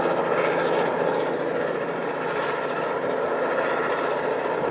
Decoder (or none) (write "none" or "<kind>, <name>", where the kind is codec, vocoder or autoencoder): none